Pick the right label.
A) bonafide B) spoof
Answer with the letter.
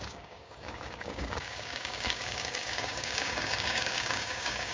B